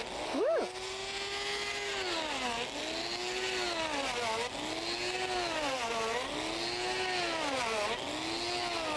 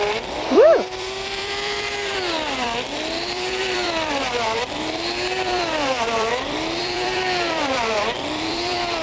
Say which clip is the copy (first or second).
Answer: second